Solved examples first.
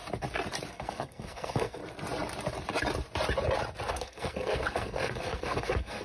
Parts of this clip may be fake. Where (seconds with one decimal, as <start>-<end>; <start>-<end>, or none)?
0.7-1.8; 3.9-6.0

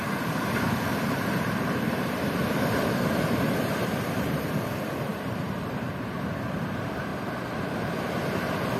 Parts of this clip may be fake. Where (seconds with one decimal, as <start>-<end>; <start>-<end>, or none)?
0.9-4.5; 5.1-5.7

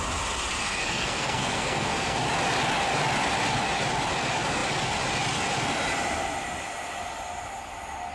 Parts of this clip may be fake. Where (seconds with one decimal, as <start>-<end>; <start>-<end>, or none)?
0.6-2.2